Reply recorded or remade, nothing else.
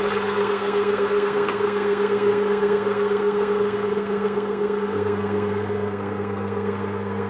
remade